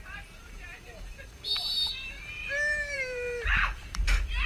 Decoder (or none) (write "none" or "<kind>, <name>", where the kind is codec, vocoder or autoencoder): vocoder, BigVGAN v2